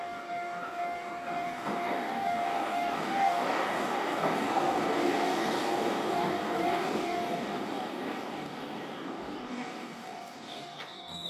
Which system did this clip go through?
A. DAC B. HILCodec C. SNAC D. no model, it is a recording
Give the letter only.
A